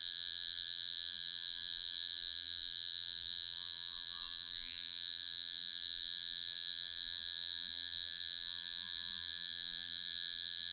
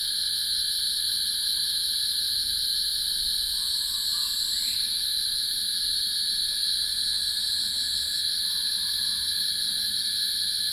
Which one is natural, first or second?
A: second